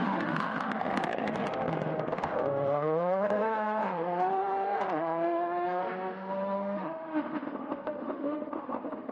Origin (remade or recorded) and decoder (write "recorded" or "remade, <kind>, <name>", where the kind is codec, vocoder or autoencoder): remade, autoencoder, DAC-VAE